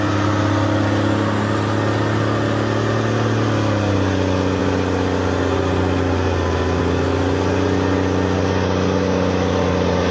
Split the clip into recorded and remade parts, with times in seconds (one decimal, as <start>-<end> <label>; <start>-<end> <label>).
0.0-10.1 recorded